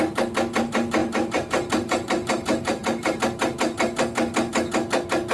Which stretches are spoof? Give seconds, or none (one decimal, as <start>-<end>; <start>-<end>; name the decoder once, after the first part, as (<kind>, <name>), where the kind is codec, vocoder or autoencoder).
1.0-3.2 (vocoder, BigVGAN v2)